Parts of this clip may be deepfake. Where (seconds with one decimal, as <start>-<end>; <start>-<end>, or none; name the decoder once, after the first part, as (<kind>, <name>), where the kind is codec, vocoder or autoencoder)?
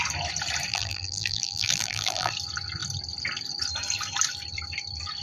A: 0.7-2.3 (vocoder, BigVGAN v2)